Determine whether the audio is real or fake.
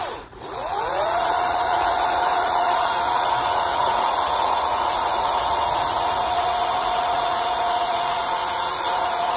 fake